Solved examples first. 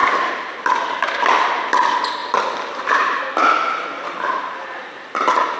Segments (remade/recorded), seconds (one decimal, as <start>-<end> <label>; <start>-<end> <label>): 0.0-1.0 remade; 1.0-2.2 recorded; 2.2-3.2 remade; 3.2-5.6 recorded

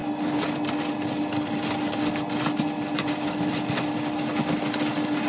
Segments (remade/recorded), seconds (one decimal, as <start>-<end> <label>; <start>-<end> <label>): 0.0-5.3 recorded

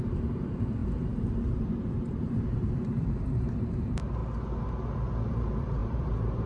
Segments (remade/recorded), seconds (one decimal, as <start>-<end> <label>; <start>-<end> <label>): 0.0-4.2 remade; 4.2-5.3 recorded; 5.3-6.5 remade

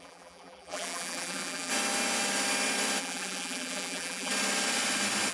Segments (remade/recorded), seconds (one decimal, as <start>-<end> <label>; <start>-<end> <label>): 0.0-1.7 remade; 1.7-3.0 recorded; 3.0-4.3 remade; 4.3-5.3 recorded

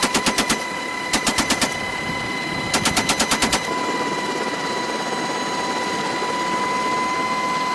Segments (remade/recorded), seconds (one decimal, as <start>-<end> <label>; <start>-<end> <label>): 0.0-2.0 remade; 2.0-7.7 recorded

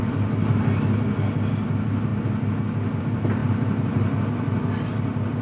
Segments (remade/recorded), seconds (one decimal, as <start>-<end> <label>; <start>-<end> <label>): 0.0-5.4 recorded

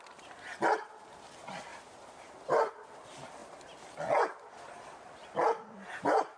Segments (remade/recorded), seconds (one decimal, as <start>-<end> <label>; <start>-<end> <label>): 0.0-1.7 recorded; 1.7-2.7 remade; 2.7-5.2 recorded; 5.2-6.4 remade

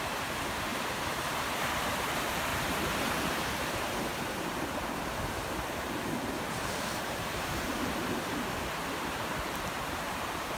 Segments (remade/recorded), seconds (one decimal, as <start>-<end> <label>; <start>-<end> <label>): 0.0-4.1 remade; 4.1-6.5 recorded; 6.5-7.7 remade; 7.7-8.3 recorded; 8.3-10.6 remade